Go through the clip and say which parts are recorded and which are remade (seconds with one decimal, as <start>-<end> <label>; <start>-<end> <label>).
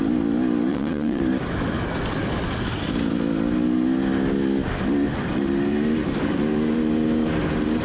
0.0-0.7 recorded; 0.7-1.2 remade; 1.2-7.8 recorded